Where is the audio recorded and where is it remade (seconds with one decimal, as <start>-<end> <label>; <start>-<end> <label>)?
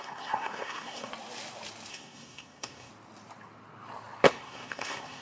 0.0-1.1 remade; 1.1-1.9 recorded; 1.9-2.9 remade; 2.9-4.3 recorded; 4.3-5.2 remade